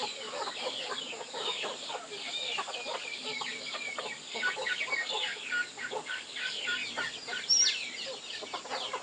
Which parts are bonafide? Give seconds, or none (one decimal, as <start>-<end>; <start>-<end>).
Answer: 6.8-9.0